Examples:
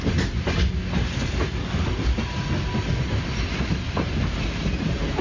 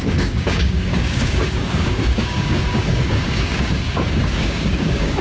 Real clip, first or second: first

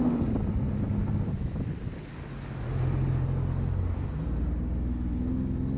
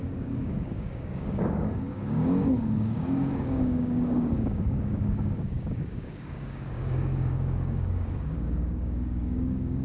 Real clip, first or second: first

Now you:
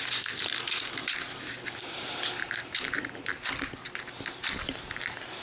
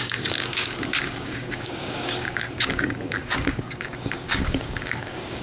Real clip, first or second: first